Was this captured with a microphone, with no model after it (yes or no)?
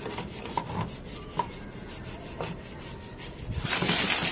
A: no